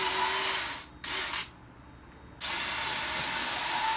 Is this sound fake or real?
real